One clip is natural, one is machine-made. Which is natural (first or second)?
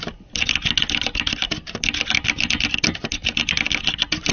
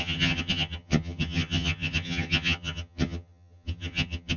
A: first